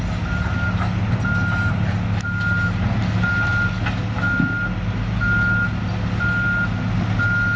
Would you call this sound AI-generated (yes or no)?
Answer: no